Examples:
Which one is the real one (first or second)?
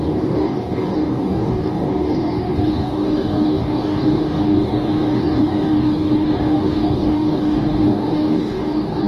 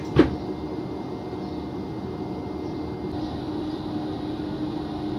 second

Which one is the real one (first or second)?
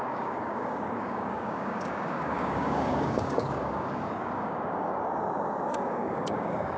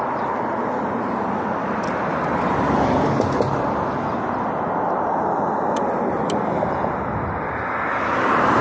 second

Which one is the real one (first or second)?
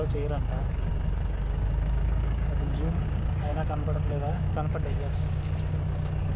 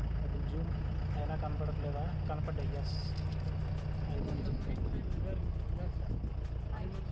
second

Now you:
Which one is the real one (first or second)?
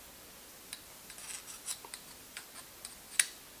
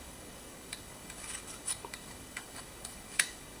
first